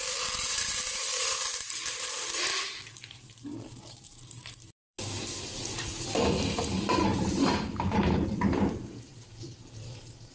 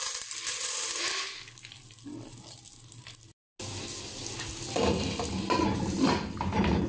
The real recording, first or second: second